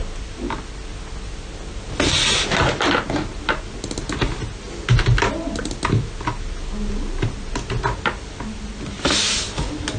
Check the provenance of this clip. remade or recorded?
recorded